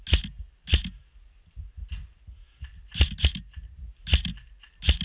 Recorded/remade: recorded